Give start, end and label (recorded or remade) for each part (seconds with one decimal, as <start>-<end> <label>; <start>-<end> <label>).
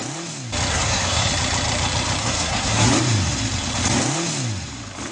0.0-0.7 recorded; 0.7-1.3 remade; 1.3-2.2 recorded; 2.2-2.9 remade; 2.9-5.1 recorded